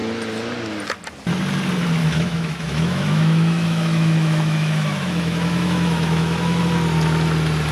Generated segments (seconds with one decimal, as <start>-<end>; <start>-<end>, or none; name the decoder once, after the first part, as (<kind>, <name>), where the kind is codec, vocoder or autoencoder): 2.0-6.6 (autoencoder, DAC-VAE)